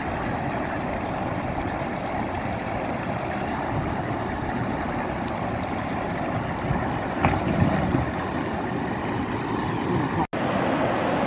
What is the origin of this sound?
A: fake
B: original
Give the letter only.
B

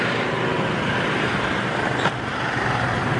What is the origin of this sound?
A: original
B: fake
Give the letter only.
A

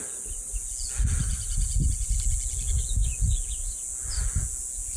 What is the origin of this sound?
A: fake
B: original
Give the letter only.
B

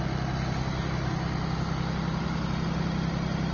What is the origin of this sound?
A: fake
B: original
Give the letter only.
B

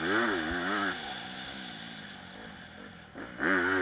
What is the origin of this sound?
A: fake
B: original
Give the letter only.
B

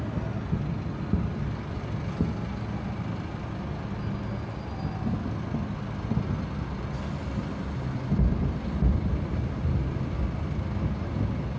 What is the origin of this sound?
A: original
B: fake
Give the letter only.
A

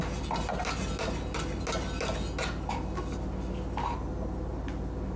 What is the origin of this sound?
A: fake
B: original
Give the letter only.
B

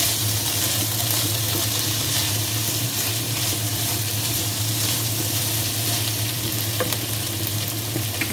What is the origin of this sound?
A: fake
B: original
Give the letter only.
A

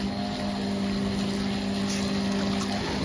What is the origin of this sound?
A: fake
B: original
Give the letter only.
B